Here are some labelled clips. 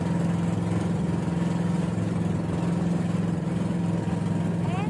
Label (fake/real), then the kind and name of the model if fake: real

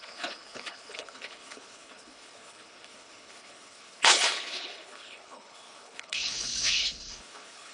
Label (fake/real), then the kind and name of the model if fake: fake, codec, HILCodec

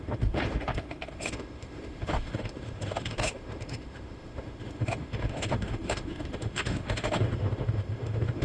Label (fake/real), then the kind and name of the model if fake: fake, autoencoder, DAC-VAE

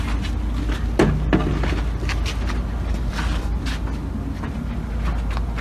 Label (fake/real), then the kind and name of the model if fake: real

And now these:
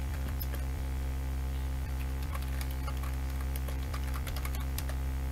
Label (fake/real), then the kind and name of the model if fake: fake, vocoder, BigVGAN v2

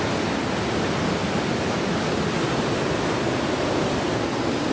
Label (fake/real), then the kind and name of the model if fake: real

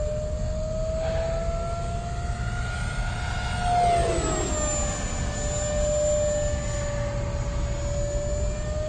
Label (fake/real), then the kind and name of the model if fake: real